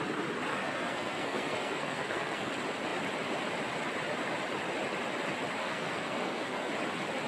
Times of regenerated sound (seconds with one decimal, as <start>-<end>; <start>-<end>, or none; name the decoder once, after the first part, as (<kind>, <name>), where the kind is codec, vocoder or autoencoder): 0.5-2.5 (codec, SNAC); 5.6-6.7